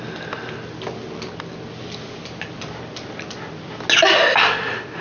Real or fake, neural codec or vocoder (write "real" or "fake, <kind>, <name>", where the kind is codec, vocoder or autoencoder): real